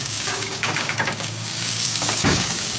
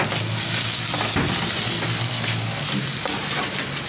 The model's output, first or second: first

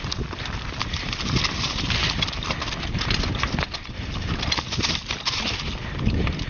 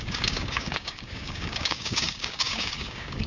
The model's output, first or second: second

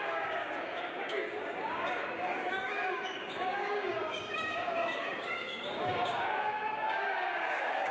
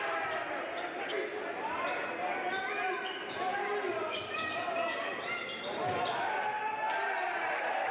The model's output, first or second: first